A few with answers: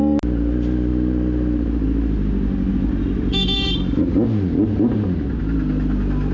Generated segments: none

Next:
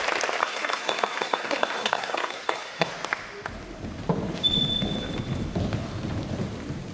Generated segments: 0.4-2.9

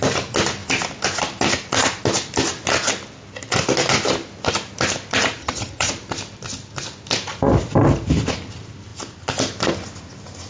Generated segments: 5.4-5.9

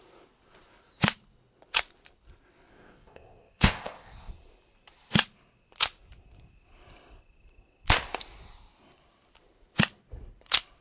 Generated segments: 2.7-4.3